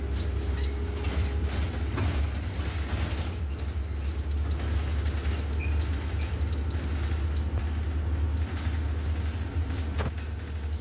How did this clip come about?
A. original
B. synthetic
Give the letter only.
A